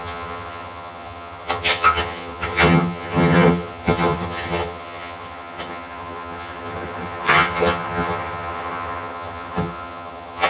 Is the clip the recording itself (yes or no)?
no